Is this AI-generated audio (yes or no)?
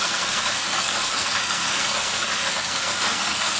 yes